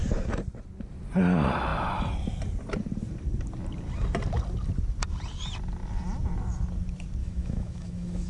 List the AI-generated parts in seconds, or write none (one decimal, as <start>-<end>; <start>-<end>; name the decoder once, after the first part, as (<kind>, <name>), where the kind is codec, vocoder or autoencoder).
7.2-8.3 (autoencoder, DAC-VAE)